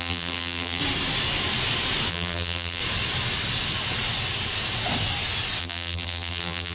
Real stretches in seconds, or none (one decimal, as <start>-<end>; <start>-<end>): 0.8-2.1; 2.8-5.6

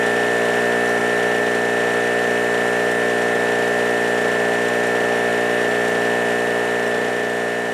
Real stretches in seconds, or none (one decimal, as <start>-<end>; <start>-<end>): 0.0-7.7

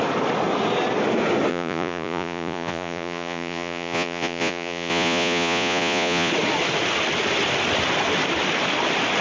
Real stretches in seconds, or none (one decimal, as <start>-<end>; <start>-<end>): 0.0-1.5; 6.3-9.2

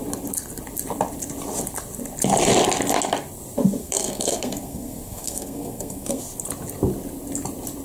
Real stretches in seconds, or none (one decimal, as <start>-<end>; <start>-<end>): 0.0-3.8; 6.2-7.8

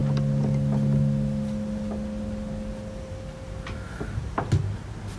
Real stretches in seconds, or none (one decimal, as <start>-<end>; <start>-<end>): 0.0-5.2

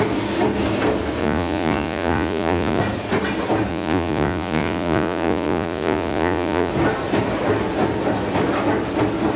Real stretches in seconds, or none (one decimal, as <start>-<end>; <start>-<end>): 0.0-1.2; 2.8-3.7; 6.7-9.4